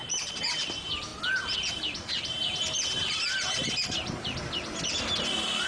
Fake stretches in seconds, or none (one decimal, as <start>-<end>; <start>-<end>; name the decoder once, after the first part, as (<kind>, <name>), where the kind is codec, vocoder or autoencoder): none